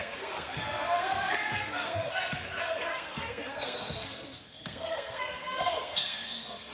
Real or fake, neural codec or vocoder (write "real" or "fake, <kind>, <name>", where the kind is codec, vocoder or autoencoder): fake, codec, SNAC